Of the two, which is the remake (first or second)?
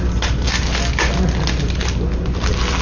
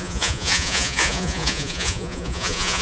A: second